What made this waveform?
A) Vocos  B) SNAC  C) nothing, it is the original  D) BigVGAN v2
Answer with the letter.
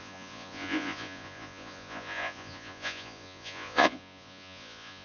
A